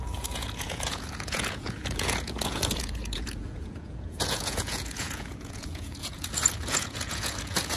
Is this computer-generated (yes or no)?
yes